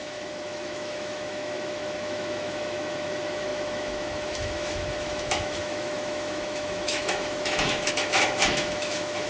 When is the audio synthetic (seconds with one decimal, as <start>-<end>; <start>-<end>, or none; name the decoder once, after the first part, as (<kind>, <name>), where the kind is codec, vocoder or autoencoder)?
0.0-9.3 (autoencoder, DAC-VAE)